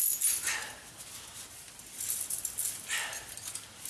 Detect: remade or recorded recorded